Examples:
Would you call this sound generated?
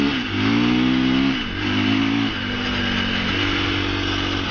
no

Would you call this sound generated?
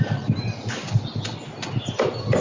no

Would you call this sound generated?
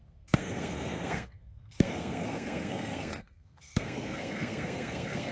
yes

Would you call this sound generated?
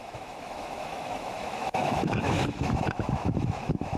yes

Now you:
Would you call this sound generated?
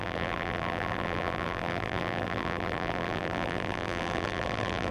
yes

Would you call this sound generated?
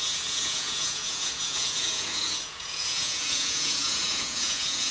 yes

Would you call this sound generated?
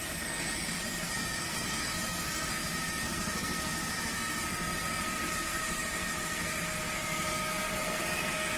yes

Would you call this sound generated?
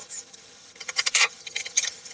yes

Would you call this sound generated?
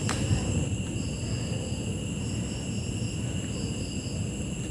no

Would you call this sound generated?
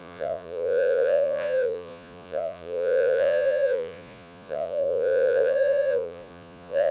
yes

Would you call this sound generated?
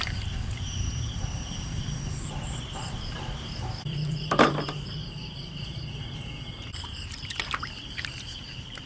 yes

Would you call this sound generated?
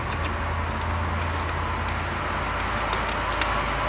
no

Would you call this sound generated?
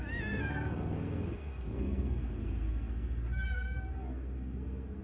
yes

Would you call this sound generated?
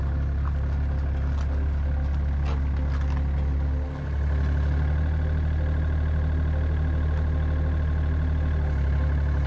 no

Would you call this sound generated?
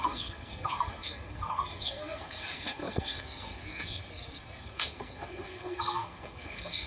yes